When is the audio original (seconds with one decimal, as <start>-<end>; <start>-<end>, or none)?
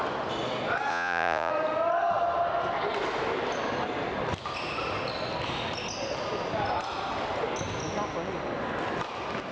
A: 0.0-0.9; 1.5-9.5